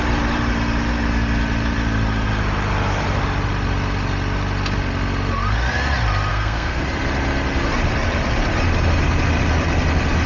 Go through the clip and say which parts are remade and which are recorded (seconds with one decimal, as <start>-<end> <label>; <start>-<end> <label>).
0.0-6.3 recorded; 6.3-6.8 remade; 6.8-10.3 recorded